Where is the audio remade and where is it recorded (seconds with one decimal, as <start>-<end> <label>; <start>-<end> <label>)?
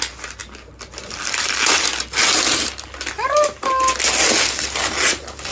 0.0-5.5 recorded